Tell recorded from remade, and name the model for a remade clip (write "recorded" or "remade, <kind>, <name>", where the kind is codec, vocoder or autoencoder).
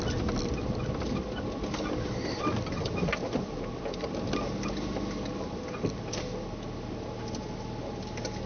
recorded